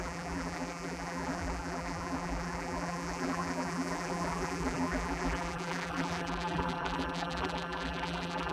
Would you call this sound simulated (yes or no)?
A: yes